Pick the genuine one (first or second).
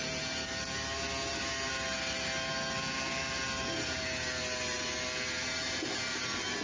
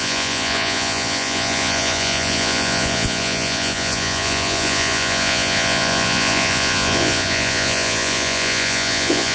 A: first